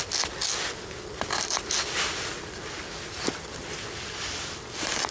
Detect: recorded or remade recorded